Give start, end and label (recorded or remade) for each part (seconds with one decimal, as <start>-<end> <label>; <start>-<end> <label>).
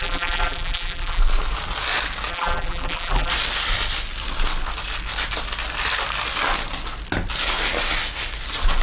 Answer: 0.0-1.2 remade; 1.2-2.3 recorded; 2.3-3.3 remade; 3.3-8.8 recorded